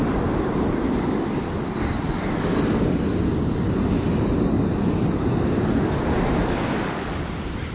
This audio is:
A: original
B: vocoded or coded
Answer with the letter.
A